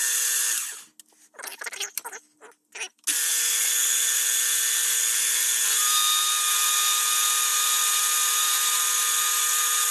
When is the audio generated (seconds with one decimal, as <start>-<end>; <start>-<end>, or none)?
7.5-8.8